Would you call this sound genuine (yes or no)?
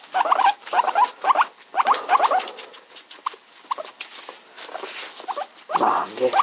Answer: yes